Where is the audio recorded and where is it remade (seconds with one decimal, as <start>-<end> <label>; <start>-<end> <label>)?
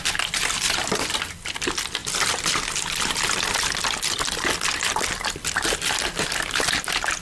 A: 0.0-7.2 recorded